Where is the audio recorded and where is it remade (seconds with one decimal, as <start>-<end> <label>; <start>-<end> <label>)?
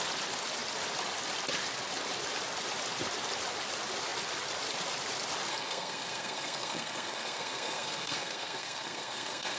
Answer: 0.0-5.5 recorded; 5.5-9.6 remade